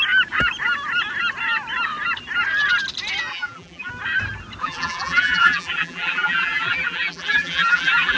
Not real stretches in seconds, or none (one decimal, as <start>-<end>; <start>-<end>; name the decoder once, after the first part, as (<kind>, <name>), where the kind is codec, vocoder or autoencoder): 3.3-3.9 (vocoder, BigVGAN v2); 4.6-8.2